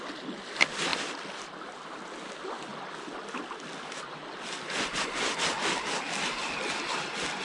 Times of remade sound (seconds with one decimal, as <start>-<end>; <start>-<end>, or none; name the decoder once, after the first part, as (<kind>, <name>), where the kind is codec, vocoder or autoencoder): none